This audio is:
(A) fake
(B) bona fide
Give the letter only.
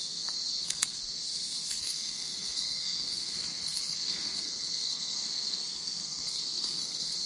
A